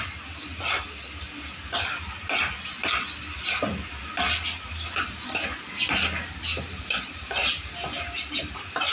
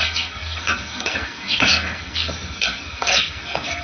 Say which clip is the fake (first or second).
second